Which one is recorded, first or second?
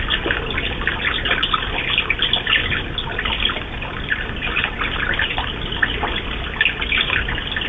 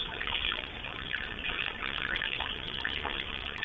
first